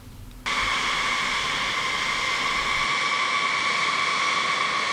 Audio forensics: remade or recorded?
recorded